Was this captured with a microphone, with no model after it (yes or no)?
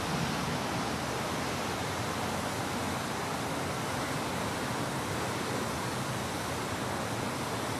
yes